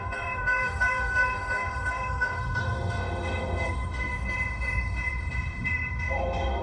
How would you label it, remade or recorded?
remade